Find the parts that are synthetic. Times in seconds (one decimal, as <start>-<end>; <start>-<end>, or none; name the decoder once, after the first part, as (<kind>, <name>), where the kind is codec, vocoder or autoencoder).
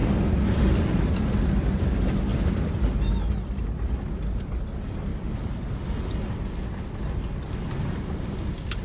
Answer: 0.0-0.7 (vocoder, BigVGAN v2); 2.3-3.6; 5.1-5.7